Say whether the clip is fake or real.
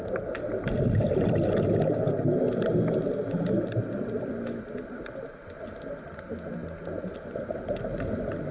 real